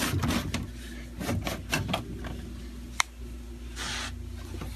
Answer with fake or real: real